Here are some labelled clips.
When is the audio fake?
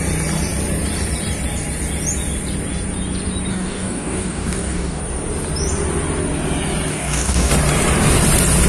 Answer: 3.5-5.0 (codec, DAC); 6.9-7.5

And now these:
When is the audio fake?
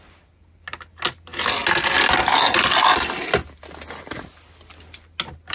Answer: none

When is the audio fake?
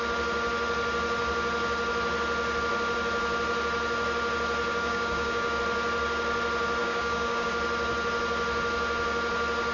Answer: 4.8-5.6 (codec, DAC); 6.8-7.5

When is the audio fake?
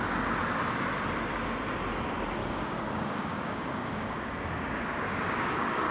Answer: 2.4-5.9 (codec, DAC)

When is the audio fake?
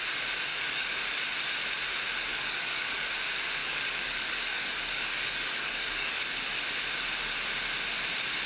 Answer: 0.5-1.0 (codec, DAC); 2.3-3.1; 3.6-6.2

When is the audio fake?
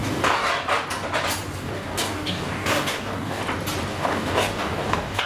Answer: 0.0-0.5 (codec, DAC); 1.6-3.4; 3.9-5.3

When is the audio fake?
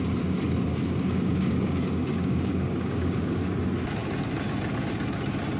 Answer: 0.7-3.4 (codec, DAC)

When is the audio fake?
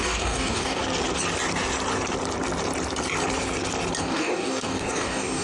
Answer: 0.0-0.8 (codec, DAC); 4.0-5.4